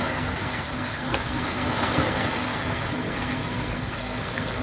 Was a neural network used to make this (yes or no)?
yes